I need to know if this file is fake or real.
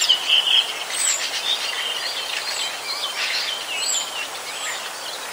real